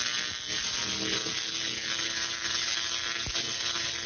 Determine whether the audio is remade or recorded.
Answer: recorded